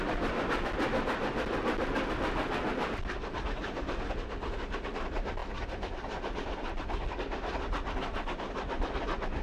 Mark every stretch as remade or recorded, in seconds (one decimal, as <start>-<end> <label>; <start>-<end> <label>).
0.0-9.4 recorded